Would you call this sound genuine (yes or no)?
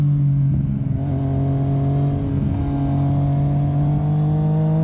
yes